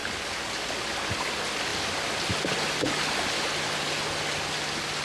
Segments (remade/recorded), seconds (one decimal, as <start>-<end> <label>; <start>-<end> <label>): 0.0-5.0 recorded

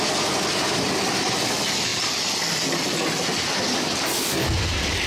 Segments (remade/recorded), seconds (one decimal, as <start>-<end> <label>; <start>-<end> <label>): 0.0-5.1 recorded

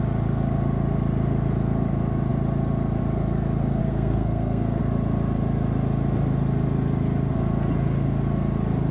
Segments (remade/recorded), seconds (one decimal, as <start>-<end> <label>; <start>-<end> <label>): 0.0-3.8 recorded; 3.8-4.8 remade; 4.8-8.9 recorded

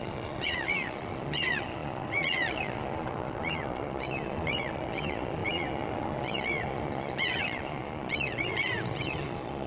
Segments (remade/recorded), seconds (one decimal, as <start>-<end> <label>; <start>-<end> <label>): 0.0-9.7 remade

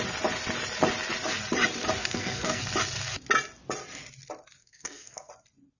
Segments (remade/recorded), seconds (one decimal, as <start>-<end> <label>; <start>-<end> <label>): 0.0-2.0 recorded; 2.0-2.6 remade; 2.6-4.6 recorded; 4.6-5.3 remade; 5.3-5.8 recorded

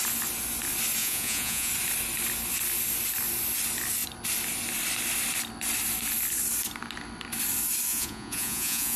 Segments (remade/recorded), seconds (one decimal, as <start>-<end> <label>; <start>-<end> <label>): 0.0-1.0 recorded; 1.0-1.7 remade; 1.7-7.9 recorded; 7.9-9.0 remade

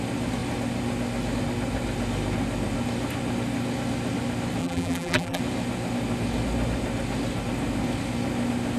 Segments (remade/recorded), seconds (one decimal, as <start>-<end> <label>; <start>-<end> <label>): 0.0-4.6 recorded; 4.6-5.4 remade; 5.4-8.8 recorded